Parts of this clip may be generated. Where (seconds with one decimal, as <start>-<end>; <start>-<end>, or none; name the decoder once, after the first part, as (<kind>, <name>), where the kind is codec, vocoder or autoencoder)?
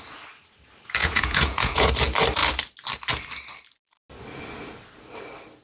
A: 1.0-1.9 (vocoder, Vocos)